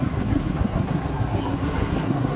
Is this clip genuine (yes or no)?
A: no